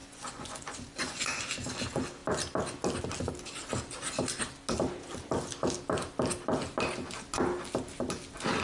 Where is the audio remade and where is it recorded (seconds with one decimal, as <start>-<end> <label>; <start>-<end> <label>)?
0.0-1.4 remade; 1.4-8.6 recorded